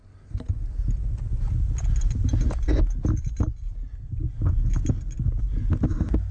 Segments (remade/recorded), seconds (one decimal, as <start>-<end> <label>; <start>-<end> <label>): 0.0-6.3 recorded